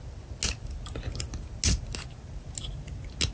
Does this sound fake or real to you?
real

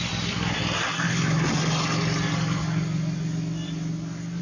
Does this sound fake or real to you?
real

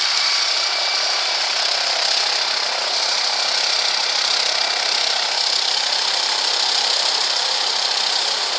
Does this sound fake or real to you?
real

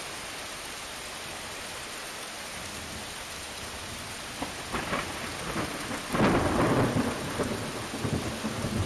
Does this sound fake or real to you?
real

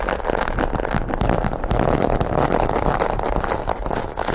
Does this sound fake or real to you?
real